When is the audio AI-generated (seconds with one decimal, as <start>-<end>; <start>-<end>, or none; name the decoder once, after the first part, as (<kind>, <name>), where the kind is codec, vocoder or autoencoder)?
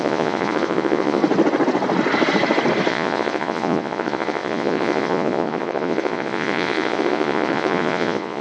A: 0.0-1.2 (vocoder, Vocos); 2.9-8.4